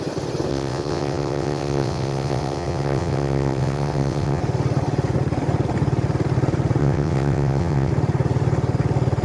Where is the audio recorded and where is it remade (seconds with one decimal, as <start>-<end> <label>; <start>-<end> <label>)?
0.0-0.5 recorded; 0.5-4.4 remade; 4.4-6.8 recorded; 6.8-7.9 remade; 7.9-9.2 recorded